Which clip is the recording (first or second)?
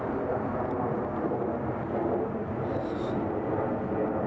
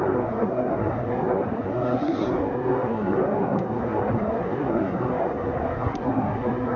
first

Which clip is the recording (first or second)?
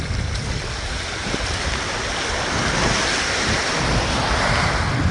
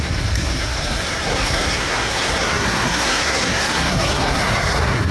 first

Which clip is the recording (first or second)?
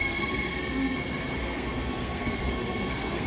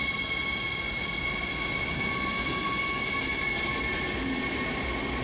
second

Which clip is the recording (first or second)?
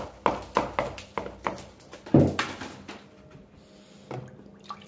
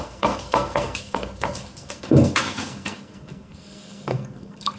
first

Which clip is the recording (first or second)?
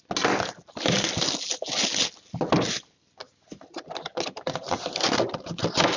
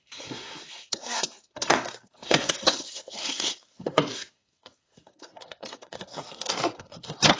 first